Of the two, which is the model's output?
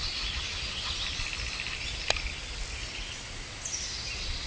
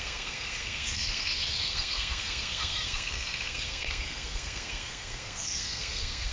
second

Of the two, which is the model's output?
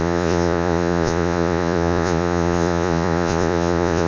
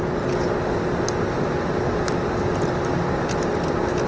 first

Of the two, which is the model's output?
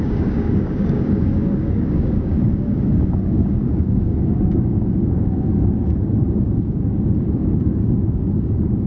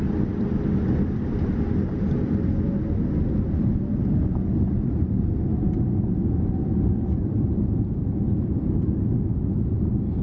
first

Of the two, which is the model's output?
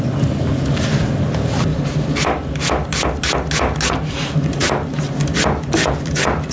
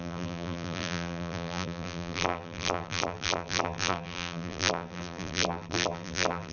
second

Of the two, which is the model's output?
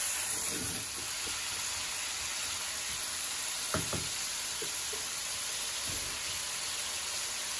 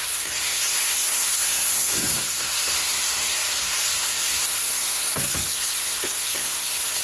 second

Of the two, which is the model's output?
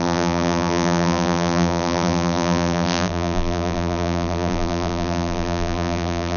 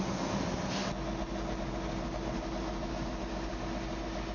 first